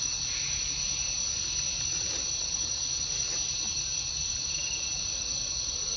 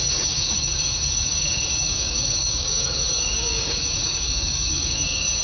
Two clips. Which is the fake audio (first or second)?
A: second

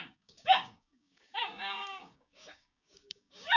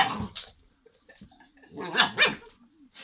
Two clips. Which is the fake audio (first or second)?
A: first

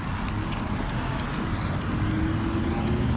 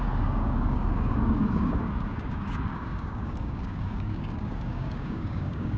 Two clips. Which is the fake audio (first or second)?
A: second